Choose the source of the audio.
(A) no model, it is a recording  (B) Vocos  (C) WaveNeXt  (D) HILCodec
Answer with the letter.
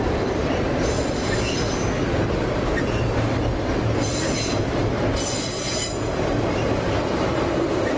A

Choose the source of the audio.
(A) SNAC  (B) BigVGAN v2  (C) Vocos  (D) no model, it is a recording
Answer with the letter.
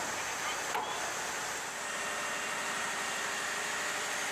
D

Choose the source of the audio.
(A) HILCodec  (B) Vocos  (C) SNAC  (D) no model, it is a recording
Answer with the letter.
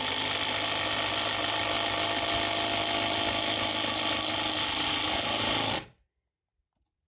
D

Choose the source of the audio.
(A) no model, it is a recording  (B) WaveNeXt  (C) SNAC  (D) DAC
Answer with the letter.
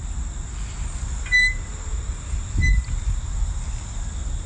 A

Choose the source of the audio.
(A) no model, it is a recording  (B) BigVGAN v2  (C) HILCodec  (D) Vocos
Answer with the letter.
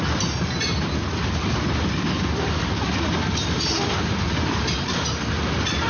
A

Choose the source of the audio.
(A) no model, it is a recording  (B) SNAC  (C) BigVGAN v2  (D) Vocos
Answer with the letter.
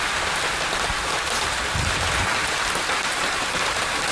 A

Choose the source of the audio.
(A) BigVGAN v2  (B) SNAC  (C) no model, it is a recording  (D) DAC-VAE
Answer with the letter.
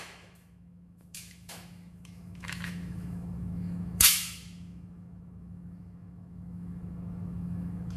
D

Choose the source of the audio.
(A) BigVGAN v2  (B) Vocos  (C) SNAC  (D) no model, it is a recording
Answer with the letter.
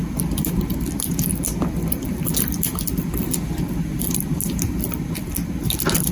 D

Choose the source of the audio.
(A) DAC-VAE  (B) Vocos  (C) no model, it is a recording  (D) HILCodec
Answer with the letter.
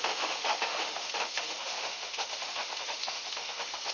A